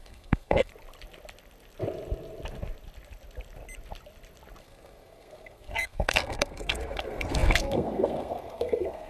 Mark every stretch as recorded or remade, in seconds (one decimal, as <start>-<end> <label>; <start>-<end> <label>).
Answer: 0.0-0.7 remade; 0.7-4.6 recorded; 4.6-9.1 remade